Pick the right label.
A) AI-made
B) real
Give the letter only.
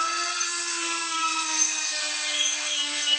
A